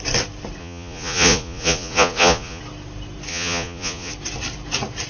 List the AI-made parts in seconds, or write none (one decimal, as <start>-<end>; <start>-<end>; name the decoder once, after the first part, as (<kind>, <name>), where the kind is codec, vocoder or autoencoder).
0.6-2.6 (vocoder, Vocos); 3.3-4.1